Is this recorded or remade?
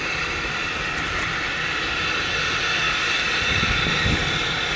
recorded